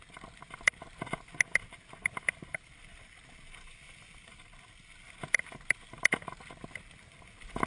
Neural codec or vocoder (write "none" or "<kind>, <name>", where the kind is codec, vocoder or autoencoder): none